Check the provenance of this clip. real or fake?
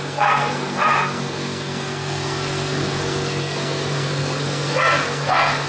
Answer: fake